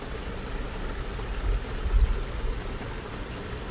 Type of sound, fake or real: real